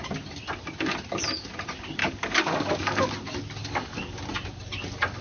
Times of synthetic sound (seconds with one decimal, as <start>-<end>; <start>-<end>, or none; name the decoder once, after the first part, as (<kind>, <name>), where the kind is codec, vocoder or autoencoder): 2.0-3.1 (codec, DAC); 3.6-4.2